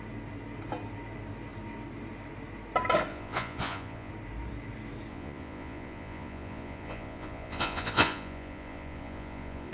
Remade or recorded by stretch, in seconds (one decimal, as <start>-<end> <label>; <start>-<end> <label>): 0.0-3.1 recorded; 3.1-4.1 remade; 4.1-5.1 recorded; 5.1-9.7 remade